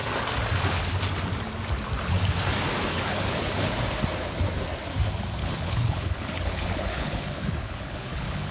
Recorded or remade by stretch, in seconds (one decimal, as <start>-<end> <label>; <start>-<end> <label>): 0.0-2.9 recorded; 2.9-3.7 remade; 3.7-5.4 recorded; 5.4-8.5 remade